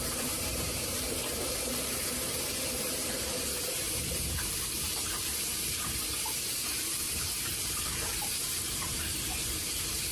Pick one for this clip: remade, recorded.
remade